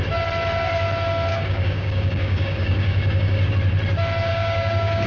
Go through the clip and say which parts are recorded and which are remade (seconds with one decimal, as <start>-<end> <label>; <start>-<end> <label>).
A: 0.0-1.3 recorded; 1.3-3.5 remade; 3.5-4.3 recorded; 4.3-5.1 remade